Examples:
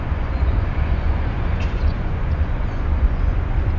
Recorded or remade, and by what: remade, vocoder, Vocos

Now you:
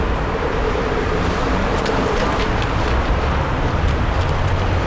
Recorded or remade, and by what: remade, vocoder, BigVGAN v2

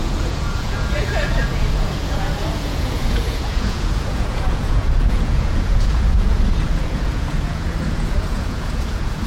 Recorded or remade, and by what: remade, vocoder, Vocos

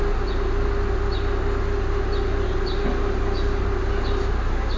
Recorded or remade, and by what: recorded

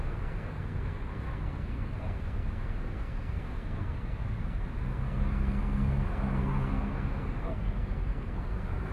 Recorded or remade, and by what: remade, codec, SNAC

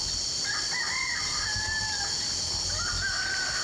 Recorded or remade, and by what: recorded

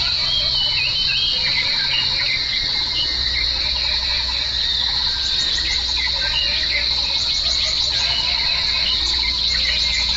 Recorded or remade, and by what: recorded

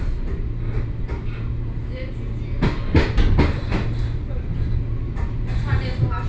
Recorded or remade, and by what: recorded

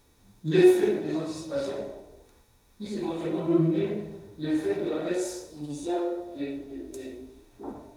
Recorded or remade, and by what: remade, autoencoder, DAC-VAE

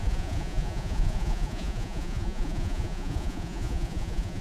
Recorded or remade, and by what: remade, vocoder, Vocos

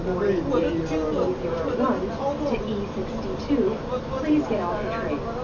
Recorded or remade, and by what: recorded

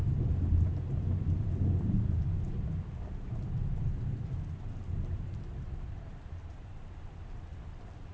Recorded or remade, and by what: recorded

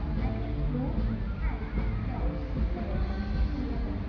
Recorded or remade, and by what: recorded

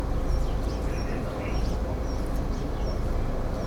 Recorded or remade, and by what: recorded